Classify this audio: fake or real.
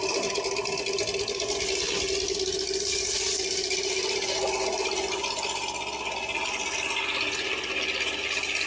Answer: real